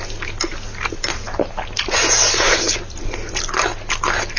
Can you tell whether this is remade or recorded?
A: recorded